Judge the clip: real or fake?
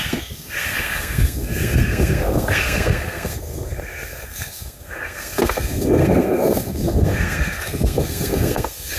fake